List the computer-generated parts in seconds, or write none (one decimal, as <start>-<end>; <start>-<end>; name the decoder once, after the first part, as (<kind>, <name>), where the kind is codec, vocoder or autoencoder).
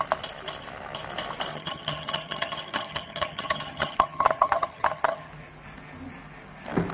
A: 1.5-5.3 (vocoder, HiFi-GAN)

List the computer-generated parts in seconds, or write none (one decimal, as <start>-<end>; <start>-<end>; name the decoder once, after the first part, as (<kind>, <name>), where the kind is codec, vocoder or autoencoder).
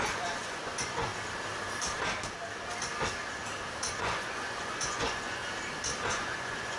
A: 0.0-1.1 (vocoder, Vocos); 3.9-5.4; 6.1-6.8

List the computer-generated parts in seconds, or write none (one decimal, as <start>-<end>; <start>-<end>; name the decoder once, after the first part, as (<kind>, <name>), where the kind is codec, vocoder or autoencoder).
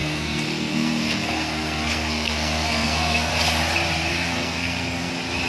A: 0.0-3.3 (codec, SNAC); 4.1-5.1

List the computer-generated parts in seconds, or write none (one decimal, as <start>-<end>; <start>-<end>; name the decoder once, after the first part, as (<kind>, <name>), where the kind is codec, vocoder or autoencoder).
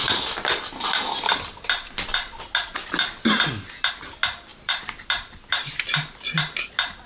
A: 4.5-5.5 (vocoder, BigVGAN v2)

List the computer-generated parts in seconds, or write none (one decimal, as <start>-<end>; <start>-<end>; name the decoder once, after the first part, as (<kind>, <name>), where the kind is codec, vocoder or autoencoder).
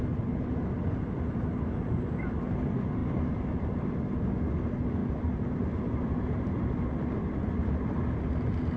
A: none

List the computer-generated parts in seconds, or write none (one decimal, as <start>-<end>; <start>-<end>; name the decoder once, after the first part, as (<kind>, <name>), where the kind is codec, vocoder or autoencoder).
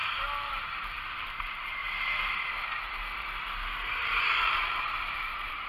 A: 0.5-1.8 (vocoder, BigVGAN v2); 4.2-5.7